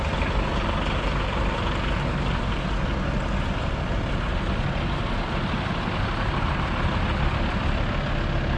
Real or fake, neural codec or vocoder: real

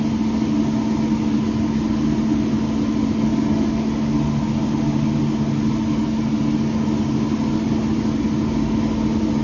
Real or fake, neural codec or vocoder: real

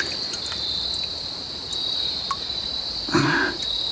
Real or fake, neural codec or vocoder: real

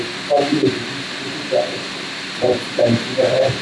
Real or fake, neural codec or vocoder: fake, vocoder, BigVGAN v2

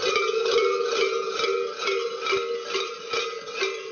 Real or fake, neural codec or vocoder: real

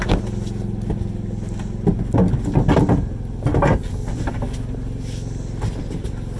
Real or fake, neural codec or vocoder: real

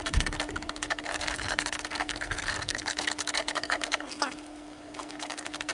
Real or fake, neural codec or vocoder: fake, codec, SNAC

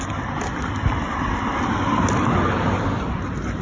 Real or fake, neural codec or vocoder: real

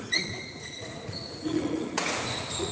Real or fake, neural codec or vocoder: fake, vocoder, Vocos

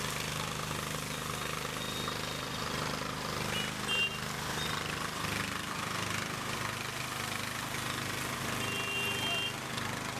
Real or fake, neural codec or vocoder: real